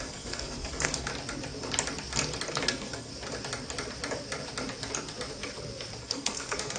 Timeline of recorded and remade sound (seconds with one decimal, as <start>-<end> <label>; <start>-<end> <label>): 0.0-1.1 remade; 1.1-2.5 recorded; 2.5-3.1 remade; 3.1-6.0 recorded; 6.0-6.8 remade